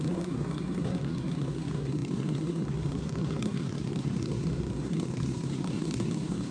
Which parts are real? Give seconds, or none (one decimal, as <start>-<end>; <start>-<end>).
none